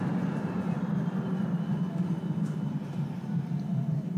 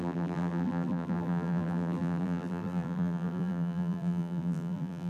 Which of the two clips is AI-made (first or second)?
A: second